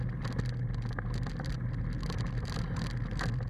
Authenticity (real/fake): real